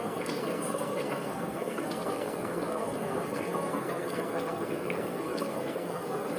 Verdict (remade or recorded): remade